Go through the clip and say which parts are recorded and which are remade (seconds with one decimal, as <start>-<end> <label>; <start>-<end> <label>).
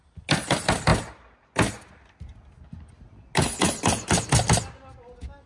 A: 0.0-5.5 recorded